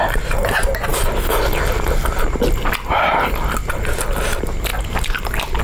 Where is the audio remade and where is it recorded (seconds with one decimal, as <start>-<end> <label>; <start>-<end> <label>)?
0.0-5.6 recorded